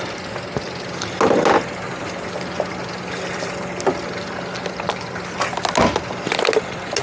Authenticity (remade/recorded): recorded